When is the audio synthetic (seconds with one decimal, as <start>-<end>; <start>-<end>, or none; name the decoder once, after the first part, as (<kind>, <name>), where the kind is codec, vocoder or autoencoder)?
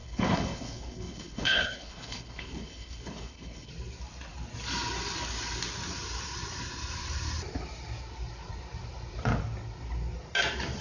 0.0-3.7 (codec, HILCodec)